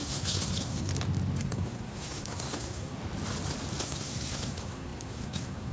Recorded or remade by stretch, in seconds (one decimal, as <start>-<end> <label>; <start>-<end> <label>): 0.0-0.9 remade; 0.9-1.4 recorded; 1.4-3.0 remade; 3.0-3.8 recorded; 3.8-5.7 remade